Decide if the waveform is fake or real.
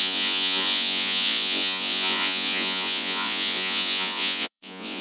fake